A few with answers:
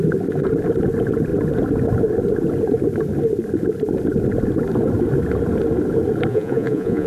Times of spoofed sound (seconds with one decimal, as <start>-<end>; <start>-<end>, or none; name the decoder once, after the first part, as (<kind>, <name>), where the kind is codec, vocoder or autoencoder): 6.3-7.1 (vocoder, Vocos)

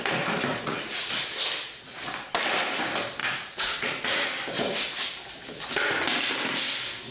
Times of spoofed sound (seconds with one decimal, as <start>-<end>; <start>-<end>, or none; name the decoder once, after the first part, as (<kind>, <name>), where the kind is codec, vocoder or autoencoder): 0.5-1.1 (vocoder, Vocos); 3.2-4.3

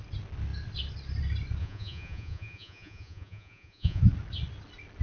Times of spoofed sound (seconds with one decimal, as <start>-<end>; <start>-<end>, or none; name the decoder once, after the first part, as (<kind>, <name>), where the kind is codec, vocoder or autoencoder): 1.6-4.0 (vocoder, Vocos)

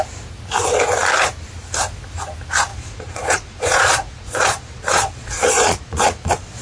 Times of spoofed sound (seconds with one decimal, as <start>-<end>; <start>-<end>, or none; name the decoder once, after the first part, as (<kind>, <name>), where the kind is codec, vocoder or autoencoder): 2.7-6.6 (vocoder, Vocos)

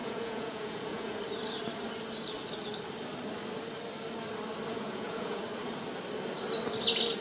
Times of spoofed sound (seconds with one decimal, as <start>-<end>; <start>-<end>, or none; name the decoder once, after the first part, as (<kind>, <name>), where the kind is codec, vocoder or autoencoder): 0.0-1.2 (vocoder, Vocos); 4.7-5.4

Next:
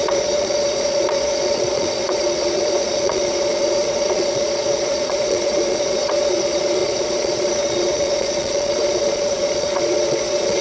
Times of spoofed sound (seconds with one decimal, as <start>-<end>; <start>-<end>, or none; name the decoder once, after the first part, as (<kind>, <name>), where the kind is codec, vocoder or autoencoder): 0.0-10.6 (vocoder, Vocos)

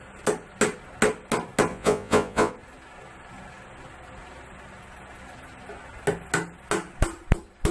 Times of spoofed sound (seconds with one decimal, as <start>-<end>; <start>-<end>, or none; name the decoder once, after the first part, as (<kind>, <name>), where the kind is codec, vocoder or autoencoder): 1.7-2.5 (vocoder, Vocos)

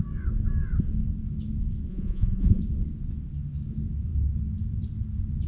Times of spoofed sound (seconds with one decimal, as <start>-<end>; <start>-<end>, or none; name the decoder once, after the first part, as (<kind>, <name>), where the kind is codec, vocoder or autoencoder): 1.9-2.6 (vocoder, Vocos)